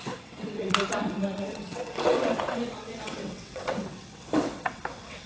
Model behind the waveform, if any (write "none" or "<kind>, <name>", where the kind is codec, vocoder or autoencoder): vocoder, WaveNeXt